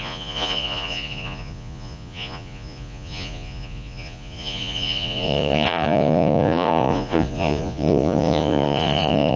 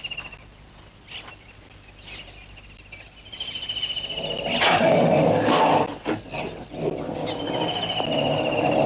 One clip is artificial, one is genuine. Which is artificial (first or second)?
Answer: first